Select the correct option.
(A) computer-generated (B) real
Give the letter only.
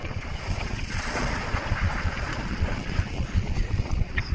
A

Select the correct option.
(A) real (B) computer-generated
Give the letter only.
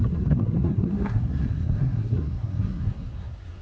B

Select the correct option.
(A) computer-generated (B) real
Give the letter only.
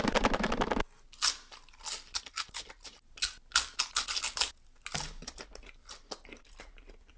B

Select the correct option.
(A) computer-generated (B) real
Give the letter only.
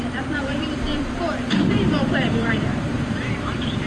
A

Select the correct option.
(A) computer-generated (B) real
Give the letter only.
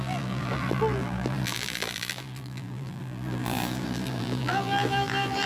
A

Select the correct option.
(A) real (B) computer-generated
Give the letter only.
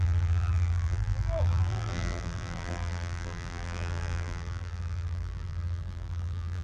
B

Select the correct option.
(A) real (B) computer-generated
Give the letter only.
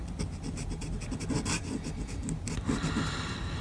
A